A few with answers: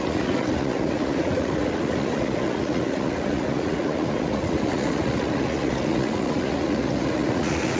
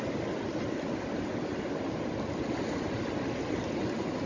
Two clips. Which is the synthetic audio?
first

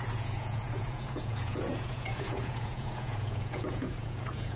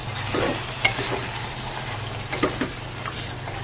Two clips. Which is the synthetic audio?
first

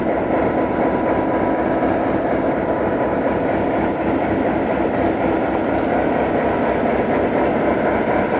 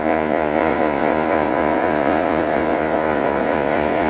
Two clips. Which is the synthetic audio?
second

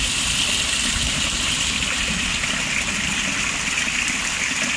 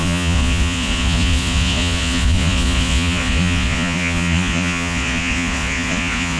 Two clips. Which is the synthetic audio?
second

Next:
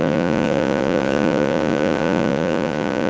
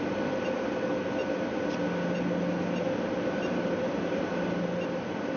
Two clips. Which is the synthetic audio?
first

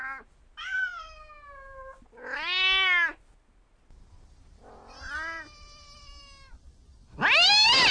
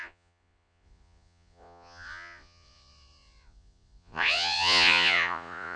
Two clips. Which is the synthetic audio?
second